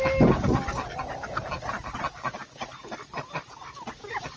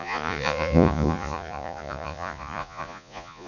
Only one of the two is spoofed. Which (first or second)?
second